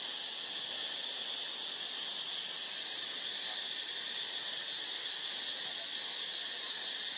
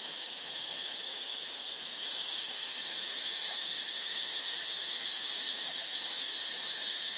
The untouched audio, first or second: first